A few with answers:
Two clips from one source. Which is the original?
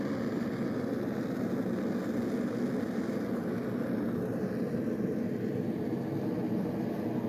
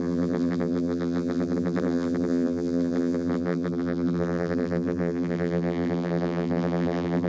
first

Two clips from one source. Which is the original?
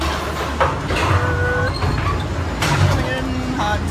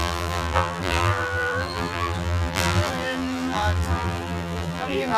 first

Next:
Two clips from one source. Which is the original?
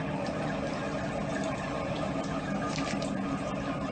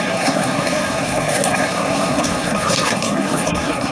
first